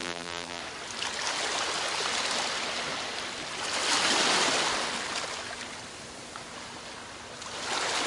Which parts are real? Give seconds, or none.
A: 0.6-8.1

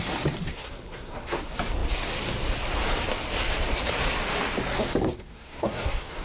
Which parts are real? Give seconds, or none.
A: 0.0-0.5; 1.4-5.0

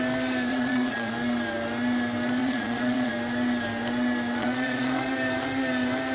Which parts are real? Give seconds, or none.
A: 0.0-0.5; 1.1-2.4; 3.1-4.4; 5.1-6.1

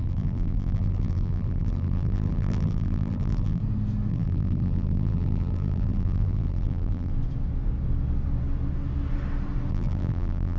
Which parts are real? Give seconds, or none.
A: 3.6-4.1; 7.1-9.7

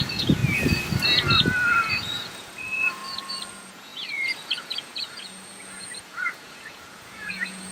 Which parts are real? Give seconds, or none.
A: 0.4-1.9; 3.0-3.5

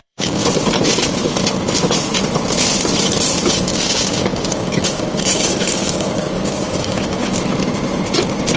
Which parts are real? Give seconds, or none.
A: 0.4-3.5; 7.2-8.6

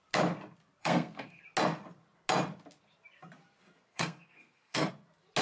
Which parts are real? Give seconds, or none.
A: 0.0-0.8; 1.4-3.9; 4.9-5.4

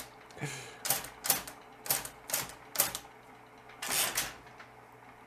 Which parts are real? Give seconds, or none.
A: 0.0-5.3